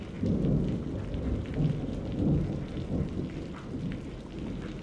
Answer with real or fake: real